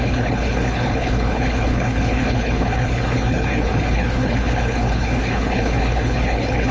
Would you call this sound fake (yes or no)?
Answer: yes